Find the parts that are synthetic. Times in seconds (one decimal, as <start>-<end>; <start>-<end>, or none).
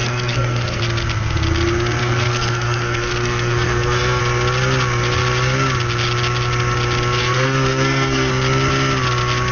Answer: 0.0-0.8; 2.0-4.2; 7.2-8.3